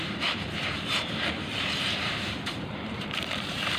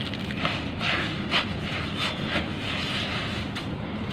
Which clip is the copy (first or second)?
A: first